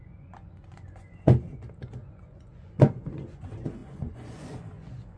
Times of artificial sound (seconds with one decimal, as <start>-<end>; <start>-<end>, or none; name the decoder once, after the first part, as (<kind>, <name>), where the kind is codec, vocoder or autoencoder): 0.0-5.2 (vocoder, Vocos)